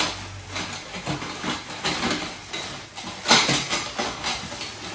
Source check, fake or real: real